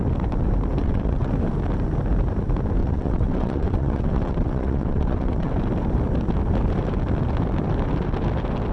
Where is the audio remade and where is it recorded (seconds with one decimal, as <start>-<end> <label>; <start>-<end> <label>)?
0.0-0.8 recorded; 0.8-1.3 remade; 1.3-2.8 recorded; 2.8-5.5 remade; 5.5-8.7 recorded